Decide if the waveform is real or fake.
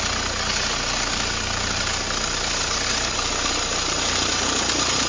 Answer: real